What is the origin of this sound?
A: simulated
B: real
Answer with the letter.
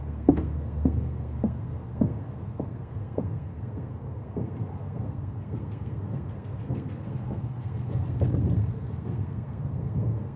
A